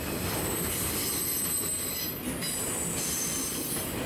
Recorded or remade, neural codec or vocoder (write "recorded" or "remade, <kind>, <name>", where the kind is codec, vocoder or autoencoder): recorded